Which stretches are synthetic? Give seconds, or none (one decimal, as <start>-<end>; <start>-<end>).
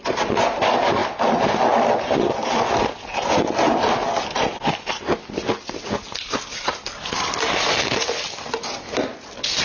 none